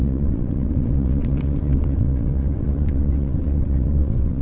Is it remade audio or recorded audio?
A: remade